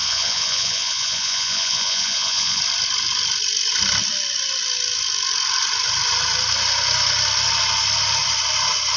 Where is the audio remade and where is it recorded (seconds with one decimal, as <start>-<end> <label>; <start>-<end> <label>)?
0.0-2.6 remade; 2.6-9.0 recorded